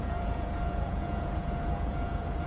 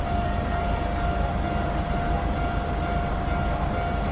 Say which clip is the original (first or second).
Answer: second